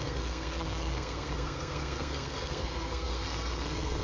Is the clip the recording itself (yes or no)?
no